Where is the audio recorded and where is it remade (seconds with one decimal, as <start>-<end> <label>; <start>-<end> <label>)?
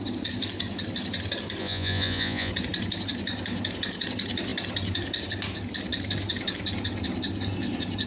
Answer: 0.0-1.6 recorded; 1.6-2.5 remade; 2.5-8.1 recorded